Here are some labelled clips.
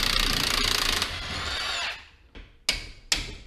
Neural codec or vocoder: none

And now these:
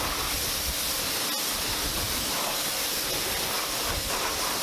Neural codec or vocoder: none